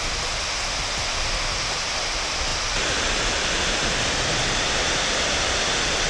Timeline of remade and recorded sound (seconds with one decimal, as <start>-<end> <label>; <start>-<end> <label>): 0.0-6.1 remade